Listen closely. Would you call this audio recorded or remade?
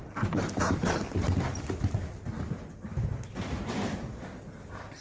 recorded